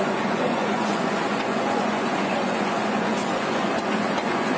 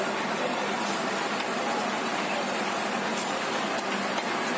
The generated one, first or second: first